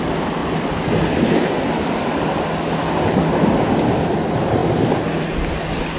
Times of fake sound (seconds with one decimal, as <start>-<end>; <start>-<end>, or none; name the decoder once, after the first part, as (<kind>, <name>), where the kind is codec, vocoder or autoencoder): none